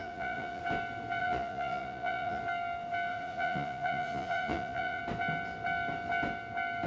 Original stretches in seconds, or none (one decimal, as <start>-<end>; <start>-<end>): 0.6-1.2; 2.4-3.1; 5.0-6.9